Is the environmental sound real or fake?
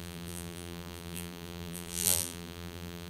fake